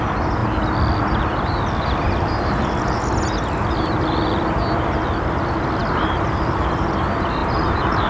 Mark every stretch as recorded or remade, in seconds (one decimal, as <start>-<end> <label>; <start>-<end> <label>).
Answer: 0.0-5.8 recorded; 5.8-6.4 remade; 6.4-7.4 recorded; 7.4-8.1 remade